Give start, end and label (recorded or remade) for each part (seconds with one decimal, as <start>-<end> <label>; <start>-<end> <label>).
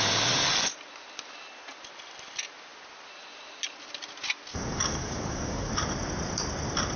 0.0-4.5 recorded; 4.5-5.7 remade; 5.7-7.0 recorded